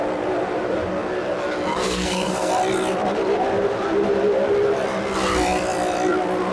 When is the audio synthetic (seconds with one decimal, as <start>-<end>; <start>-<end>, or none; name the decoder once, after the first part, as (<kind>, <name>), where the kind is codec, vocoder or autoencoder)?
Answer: 1.7-2.5 (codec, SNAC)